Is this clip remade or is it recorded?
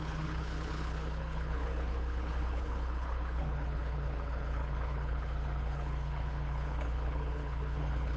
remade